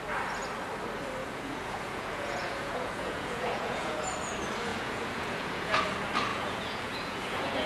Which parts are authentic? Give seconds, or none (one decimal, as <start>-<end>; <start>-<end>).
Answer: 0.0-1.2; 4.0-4.7; 5.8-6.3